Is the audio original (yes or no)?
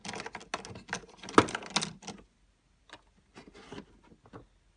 yes